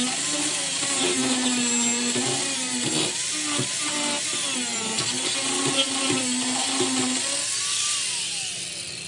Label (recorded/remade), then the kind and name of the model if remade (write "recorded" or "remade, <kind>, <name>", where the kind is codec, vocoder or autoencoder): recorded